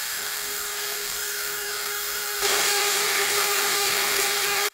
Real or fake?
fake